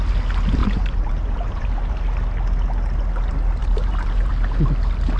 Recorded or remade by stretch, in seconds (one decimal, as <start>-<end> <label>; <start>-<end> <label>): 0.0-0.6 recorded; 0.6-2.0 remade; 2.0-3.6 recorded; 3.6-4.3 remade; 4.3-5.2 recorded